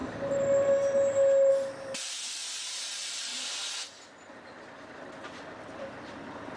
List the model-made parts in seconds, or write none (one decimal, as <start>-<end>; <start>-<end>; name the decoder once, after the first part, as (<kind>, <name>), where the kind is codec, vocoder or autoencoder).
none